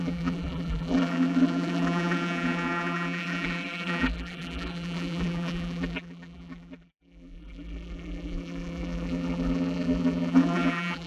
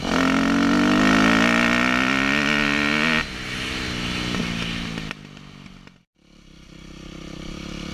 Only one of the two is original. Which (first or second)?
second